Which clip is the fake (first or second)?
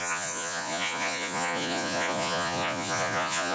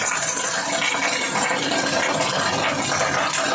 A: first